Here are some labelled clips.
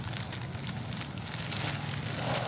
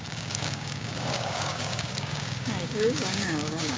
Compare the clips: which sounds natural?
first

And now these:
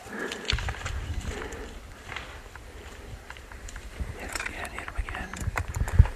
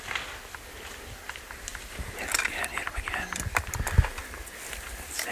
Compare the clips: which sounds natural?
second